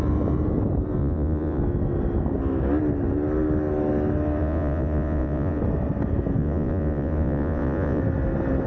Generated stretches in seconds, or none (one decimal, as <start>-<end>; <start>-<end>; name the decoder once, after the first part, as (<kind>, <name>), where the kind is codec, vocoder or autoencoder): 1.0-1.6 (vocoder, Vocos); 4.4-5.6; 6.4-8.0